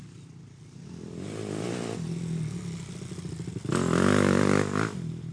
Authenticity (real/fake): real